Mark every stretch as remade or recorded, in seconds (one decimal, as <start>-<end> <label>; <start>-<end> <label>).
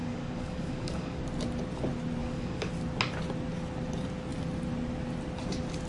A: 0.0-1.2 remade; 1.2-2.2 recorded; 2.2-2.7 remade; 2.7-5.9 recorded